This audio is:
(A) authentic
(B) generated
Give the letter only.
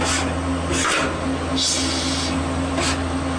A